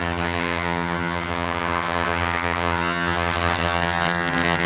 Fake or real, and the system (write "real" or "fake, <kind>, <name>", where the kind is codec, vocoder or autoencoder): fake, vocoder, HiFi-GAN